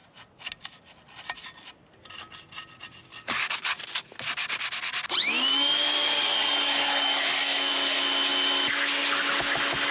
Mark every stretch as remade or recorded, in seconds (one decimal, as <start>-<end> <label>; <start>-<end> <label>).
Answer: 0.0-3.1 recorded; 3.1-3.8 remade; 3.8-5.5 recorded; 5.5-7.7 remade; 7.7-9.9 recorded